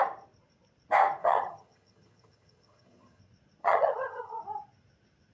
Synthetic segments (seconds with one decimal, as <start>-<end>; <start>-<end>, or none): 1.2-3.2; 3.6-4.4